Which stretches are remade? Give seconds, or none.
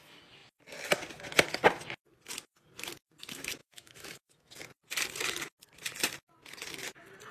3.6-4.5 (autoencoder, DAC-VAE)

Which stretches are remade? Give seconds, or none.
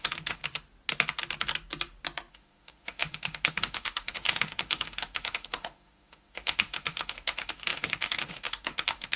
0.0-0.4 (autoencoder, DAC-VAE); 2.3-9.2